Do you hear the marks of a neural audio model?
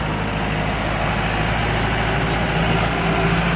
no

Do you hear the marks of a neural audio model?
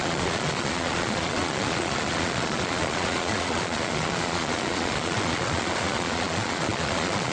yes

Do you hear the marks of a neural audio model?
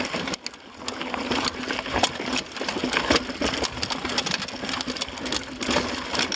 no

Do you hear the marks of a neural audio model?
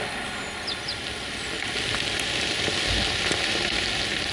no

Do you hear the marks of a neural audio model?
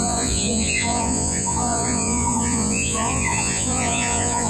yes